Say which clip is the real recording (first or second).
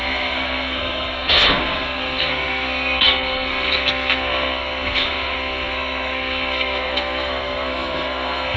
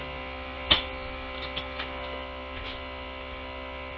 second